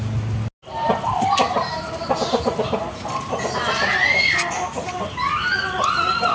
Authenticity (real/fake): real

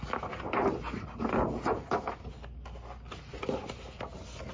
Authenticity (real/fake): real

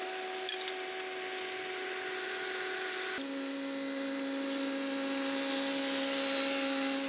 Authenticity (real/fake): real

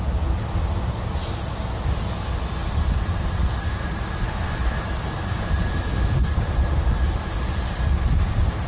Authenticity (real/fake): real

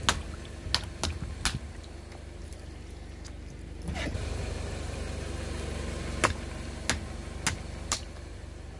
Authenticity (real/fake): real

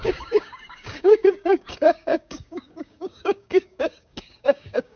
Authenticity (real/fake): fake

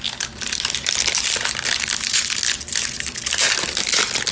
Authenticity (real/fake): real